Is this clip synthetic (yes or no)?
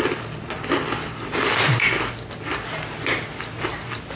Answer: no